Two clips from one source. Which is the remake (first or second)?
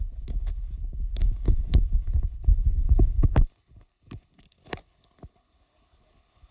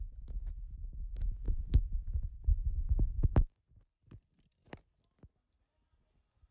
first